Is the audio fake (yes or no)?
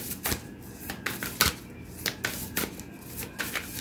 no